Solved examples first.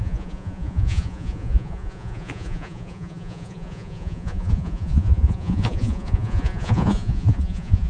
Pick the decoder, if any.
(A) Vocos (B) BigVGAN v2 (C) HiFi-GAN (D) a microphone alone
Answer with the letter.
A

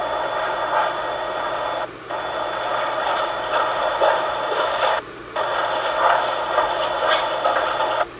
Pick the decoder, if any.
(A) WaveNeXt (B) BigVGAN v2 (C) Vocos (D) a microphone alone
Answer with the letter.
D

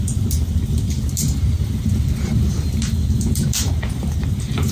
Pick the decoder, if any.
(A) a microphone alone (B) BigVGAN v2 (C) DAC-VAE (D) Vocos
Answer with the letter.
B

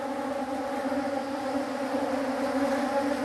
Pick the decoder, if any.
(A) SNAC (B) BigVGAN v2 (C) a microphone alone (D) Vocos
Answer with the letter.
C